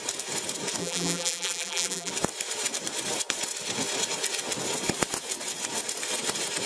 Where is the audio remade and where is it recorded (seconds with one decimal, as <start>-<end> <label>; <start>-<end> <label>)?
0.0-0.8 recorded; 0.8-2.1 remade; 2.1-6.7 recorded